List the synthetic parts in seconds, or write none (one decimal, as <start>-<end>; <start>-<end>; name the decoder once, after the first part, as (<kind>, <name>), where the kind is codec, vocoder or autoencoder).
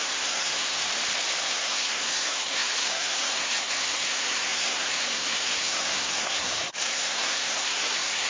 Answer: 0.0-0.8 (codec, SNAC); 1.4-8.3